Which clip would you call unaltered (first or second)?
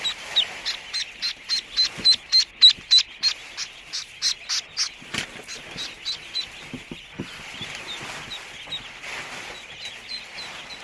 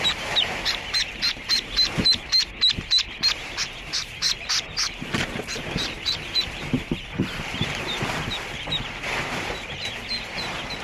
first